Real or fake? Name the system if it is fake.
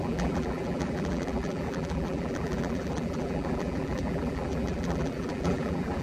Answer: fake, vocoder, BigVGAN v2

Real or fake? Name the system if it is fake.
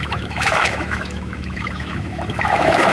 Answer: fake, autoencoder, DAC-VAE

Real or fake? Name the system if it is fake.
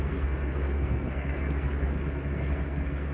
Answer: fake, codec, SNAC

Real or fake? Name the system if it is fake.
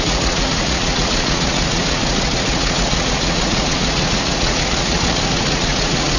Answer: fake, vocoder, Vocos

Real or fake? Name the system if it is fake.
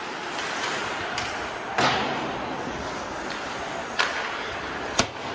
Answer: real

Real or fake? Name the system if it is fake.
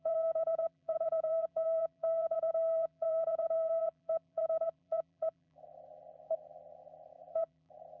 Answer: fake, vocoder, BigVGAN v2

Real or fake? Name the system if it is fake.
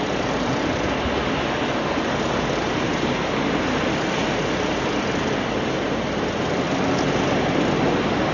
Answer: real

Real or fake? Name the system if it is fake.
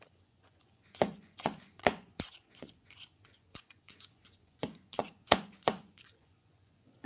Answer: fake, vocoder, Vocos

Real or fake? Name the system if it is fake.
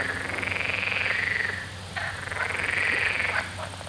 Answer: real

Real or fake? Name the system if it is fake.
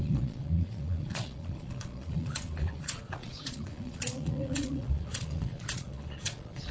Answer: fake, vocoder, Vocos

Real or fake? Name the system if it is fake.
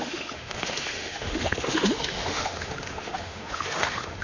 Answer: fake, autoencoder, DAC-VAE